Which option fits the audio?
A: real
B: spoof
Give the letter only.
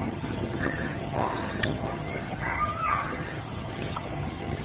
B